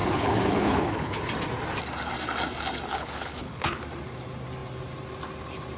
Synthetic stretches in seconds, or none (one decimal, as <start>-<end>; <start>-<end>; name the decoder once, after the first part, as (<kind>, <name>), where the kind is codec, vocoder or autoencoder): 0.0-1.2 (codec, HILCodec); 2.9-3.8

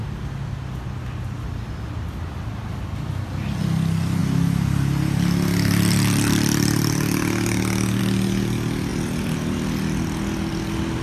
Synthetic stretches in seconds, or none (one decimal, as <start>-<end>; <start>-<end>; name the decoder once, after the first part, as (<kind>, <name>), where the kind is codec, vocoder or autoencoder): none

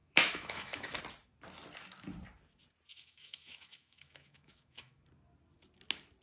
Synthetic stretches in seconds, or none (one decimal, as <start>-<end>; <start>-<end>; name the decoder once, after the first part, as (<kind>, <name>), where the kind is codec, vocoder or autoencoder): 0.0-1.0 (autoencoder, DAC-VAE); 2.9-5.0

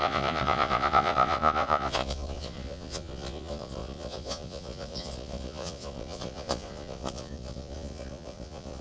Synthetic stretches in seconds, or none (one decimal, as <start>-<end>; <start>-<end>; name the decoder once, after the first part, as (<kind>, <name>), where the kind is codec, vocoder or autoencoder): 0.0-8.8 (vocoder, Vocos)

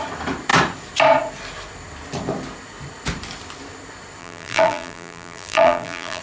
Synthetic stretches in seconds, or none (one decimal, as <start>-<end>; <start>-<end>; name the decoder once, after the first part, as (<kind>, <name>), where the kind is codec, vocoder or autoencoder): 4.2-6.2 (vocoder, BigVGAN v2)

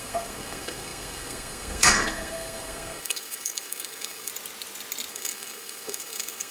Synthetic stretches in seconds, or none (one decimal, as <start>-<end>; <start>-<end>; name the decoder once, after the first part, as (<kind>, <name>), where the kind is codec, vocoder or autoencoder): 0.0-4.3 (codec, SNAC); 5.1-6.5